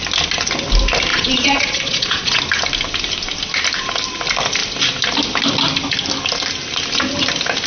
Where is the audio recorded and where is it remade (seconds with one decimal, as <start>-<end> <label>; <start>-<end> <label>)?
0.0-1.1 recorded; 1.1-2.4 remade; 2.4-7.7 recorded